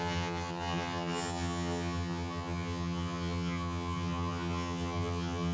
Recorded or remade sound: remade